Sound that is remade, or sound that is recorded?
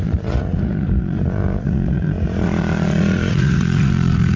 remade